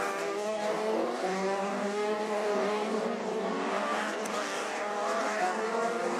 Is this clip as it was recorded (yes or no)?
no